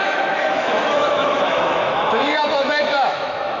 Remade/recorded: remade